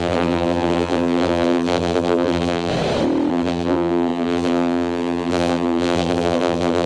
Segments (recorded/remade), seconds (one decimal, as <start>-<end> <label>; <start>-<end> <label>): 0.0-2.7 remade; 2.7-3.3 recorded; 3.3-6.9 remade